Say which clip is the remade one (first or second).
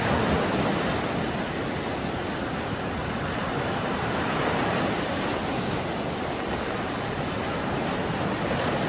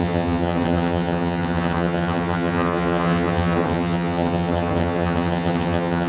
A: second